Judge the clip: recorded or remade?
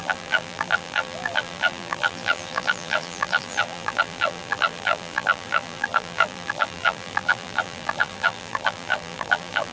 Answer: remade